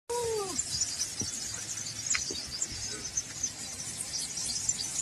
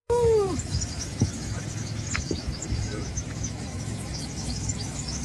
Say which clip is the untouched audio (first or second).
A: first